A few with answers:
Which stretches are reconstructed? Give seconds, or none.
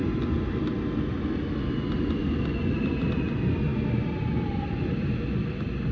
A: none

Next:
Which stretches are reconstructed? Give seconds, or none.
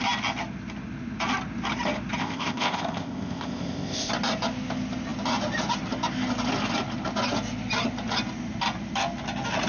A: 2.2-4.1 (codec, ZipCodec)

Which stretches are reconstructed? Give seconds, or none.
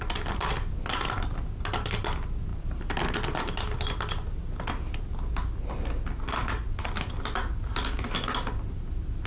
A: none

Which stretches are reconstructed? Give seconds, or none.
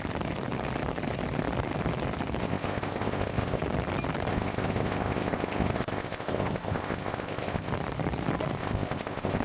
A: 2.4-3.6 (codec, ZipCodec); 4.3-7.7; 8.6-9.4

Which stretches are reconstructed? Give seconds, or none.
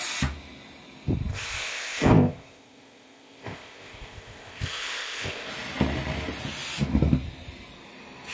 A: 1.3-5.5 (codec, ZipCodec)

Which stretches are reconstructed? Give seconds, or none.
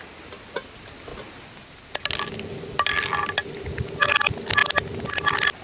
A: none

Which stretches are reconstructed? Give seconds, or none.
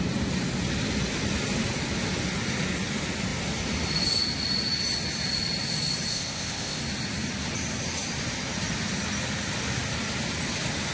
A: 6.1-6.8 (codec, ZipCodec)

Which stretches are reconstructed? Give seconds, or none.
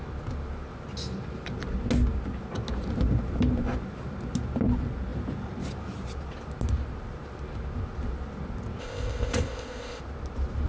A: 8.8-10.0 (codec, ZipCodec)